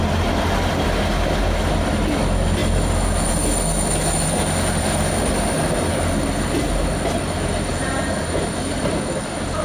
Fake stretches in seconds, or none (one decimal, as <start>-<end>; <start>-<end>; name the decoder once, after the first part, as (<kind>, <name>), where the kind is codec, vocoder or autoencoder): 7.7-8.4 (vocoder, BigVGAN v2)